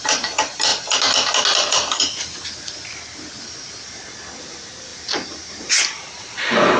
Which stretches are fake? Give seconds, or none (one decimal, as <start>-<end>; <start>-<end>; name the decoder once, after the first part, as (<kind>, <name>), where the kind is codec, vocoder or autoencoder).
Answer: 0.0-0.7 (vocoder, BigVGAN v2); 4.4-6.8